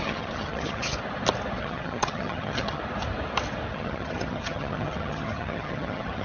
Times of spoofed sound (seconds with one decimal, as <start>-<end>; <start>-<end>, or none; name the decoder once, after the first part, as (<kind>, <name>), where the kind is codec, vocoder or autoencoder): 0.0-0.9 (vocoder, HiFi-GAN); 1.6-2.8; 3.7-6.2